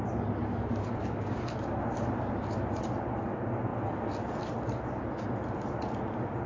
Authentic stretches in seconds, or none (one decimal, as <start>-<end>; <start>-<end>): 0.0-0.4; 1.8-6.5